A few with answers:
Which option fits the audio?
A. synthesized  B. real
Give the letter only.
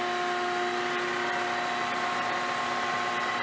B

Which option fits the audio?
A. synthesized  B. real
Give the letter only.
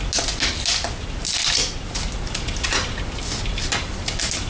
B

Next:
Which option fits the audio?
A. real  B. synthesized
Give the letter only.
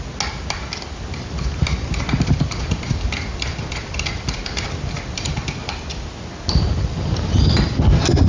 A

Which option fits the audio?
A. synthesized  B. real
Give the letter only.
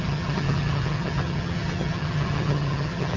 A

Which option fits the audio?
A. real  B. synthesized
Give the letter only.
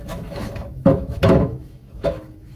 B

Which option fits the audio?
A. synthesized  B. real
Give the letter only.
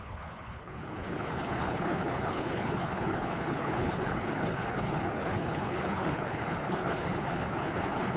A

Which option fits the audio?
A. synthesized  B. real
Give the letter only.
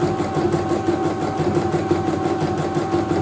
B